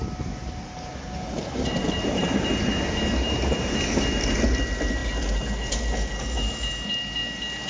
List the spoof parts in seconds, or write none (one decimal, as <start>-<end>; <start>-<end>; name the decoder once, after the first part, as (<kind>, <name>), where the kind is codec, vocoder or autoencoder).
none